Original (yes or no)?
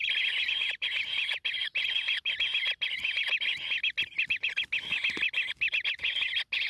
yes